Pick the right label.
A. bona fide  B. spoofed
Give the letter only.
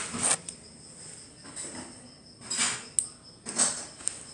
A